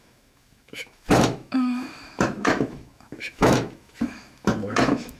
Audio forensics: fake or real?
fake